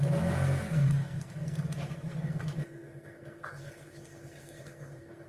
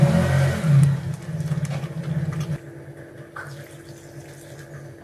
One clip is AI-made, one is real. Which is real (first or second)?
second